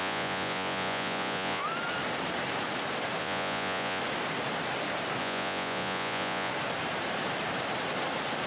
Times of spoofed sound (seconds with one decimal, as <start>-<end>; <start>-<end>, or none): 0.0-1.6; 3.2-4.0; 5.2-6.5